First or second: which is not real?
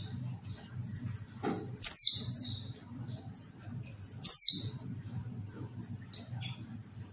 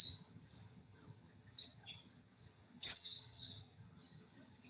second